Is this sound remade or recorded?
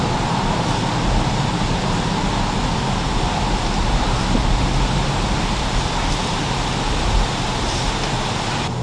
recorded